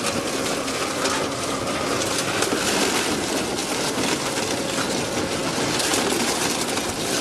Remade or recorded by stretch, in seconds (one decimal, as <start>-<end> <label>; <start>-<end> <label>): 0.0-7.2 recorded